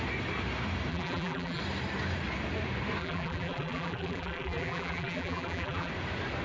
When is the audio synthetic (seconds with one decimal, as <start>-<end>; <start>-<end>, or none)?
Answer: 0.9-1.6; 3.0-5.9

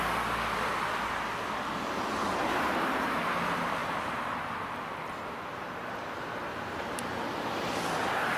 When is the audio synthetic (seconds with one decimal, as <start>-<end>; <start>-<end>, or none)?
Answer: 2.2-3.4; 3.8-4.9